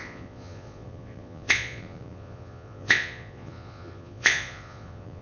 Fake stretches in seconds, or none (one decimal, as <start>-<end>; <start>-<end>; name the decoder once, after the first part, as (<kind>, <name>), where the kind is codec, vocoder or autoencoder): 0.0-5.2 (vocoder, Vocos)